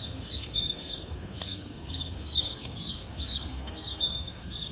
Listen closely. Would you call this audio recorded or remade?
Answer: remade